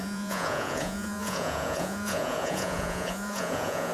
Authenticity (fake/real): fake